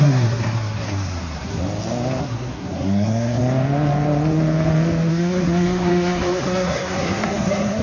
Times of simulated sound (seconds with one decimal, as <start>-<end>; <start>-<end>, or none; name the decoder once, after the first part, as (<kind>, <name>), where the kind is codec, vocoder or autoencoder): 0.0-1.6 (codec, SNAC); 2.2-3.4; 5.1-7.8

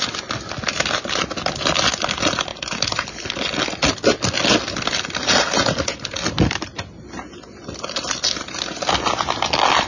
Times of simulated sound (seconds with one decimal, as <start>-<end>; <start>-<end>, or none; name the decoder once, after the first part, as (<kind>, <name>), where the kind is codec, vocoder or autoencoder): none

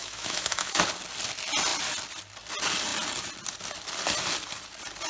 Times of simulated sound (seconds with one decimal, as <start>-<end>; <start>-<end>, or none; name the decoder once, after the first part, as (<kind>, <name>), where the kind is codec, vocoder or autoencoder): 0.0-0.8 (autoencoder, DAC-VAE)